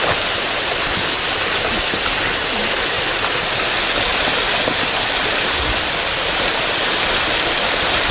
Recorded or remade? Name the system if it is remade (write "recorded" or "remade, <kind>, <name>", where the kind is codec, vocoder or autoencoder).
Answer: recorded